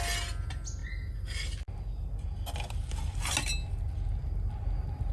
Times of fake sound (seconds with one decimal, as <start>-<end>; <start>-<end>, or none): none